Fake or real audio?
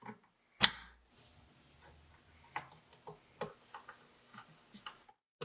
real